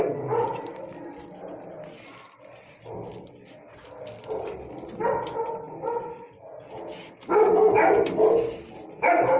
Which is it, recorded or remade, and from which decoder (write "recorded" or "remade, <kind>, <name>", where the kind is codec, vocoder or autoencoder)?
recorded